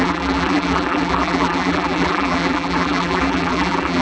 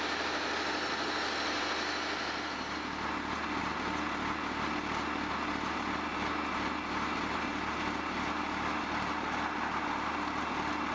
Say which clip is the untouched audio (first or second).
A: second